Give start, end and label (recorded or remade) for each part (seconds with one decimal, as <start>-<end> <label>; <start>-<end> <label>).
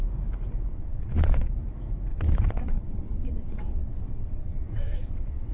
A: 0.0-0.7 recorded; 0.7-1.5 remade; 1.5-2.1 recorded; 2.1-5.5 remade